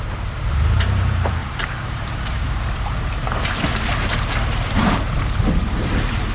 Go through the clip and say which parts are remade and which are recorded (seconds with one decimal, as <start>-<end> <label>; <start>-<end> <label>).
0.0-6.3 remade

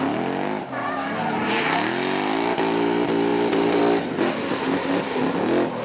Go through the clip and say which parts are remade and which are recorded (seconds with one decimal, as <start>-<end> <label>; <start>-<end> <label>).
0.0-3.3 recorded; 3.3-3.8 remade; 3.8-5.8 recorded

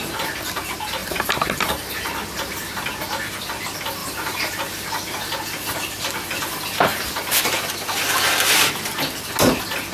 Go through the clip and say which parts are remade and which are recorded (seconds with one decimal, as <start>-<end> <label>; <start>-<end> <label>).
0.0-1.0 recorded; 1.0-2.1 remade; 2.1-4.0 recorded; 4.0-4.6 remade; 4.6-6.9 recorded; 6.9-7.5 remade; 7.5-9.9 recorded

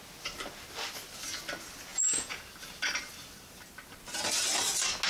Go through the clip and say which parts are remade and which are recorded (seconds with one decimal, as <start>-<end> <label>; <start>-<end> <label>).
0.0-1.9 recorded; 1.9-2.4 remade; 2.4-5.1 recorded